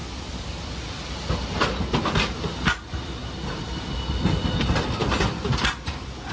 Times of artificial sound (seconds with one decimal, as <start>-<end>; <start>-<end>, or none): none